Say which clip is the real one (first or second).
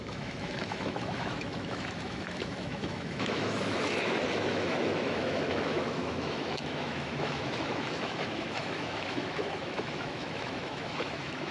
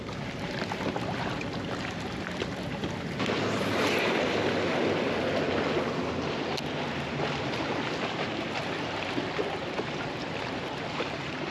second